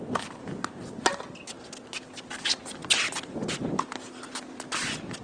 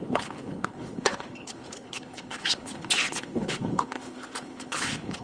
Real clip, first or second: first